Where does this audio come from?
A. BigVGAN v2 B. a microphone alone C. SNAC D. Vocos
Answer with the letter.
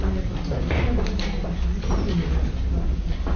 B